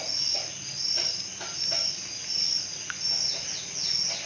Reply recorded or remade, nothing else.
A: remade